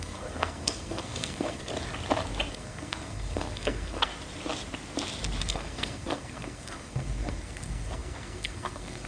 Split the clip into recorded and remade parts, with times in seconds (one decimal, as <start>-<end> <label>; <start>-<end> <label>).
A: 0.0-1.7 remade; 1.7-2.5 recorded; 2.5-4.1 remade; 4.1-5.4 recorded; 5.4-9.1 remade